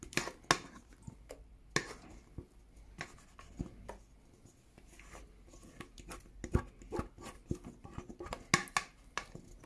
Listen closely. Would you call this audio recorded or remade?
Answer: recorded